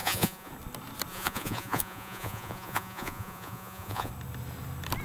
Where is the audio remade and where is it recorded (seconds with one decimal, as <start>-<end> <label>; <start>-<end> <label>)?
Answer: 0.0-0.5 remade; 0.5-1.1 recorded; 1.1-4.1 remade; 4.1-5.0 recorded